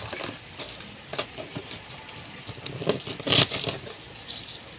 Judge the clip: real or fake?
real